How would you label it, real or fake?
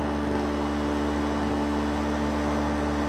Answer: real